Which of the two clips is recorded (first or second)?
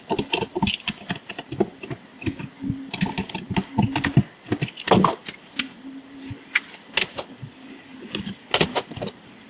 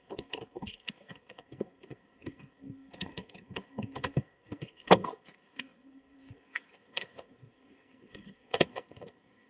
first